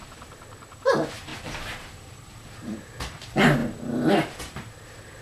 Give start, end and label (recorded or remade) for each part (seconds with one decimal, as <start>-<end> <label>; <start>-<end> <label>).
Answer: 0.0-1.3 recorded; 1.3-3.0 remade; 3.0-5.2 recorded